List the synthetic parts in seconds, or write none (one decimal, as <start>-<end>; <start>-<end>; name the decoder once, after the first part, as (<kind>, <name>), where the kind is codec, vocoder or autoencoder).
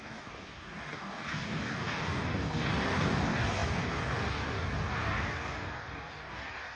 0.0-6.8 (codec, DAC)